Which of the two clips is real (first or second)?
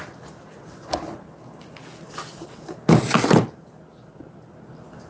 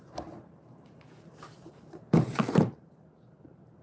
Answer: first